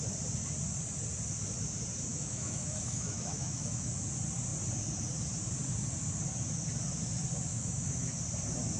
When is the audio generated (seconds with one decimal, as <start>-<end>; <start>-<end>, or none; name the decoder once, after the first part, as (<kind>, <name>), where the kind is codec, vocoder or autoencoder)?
2.1-3.9 (autoencoder, DAC-VAE); 7.5-8.2